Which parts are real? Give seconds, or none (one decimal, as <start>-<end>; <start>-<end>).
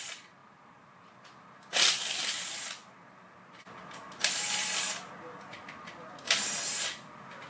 0.0-0.4; 3.6-7.5